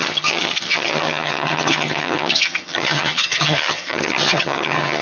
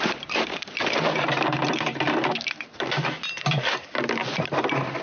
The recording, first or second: second